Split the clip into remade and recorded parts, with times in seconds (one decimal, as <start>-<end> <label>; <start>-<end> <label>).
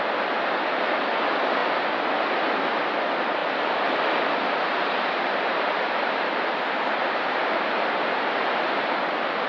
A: 0.0-3.4 recorded; 3.4-7.7 remade; 7.7-9.5 recorded